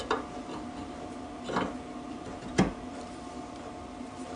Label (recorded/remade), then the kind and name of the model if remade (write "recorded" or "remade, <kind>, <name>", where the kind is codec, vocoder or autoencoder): remade, vocoder, BigVGAN v2